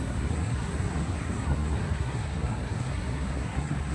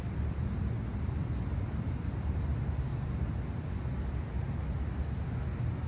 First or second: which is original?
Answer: second